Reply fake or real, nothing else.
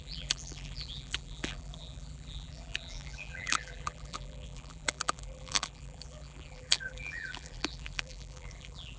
fake